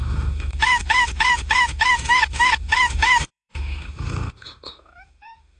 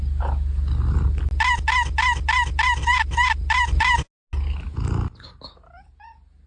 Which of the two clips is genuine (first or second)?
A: second